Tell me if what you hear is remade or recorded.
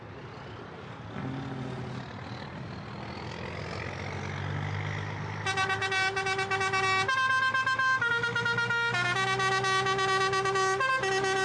recorded